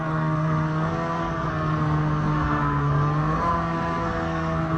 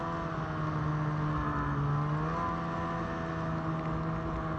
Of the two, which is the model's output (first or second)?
first